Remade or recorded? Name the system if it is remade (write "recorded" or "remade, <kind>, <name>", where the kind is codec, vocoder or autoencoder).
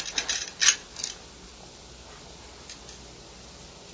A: recorded